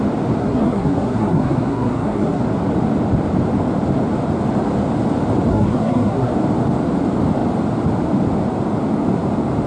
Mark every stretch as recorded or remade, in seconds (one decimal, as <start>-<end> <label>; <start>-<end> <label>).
0.0-0.4 recorded; 0.4-2.4 remade; 2.4-5.5 recorded; 5.5-6.3 remade; 6.3-9.7 recorded